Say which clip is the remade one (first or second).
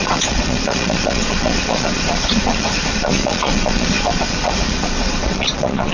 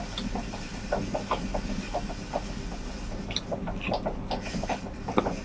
first